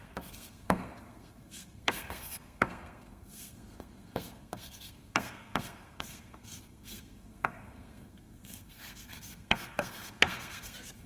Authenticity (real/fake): fake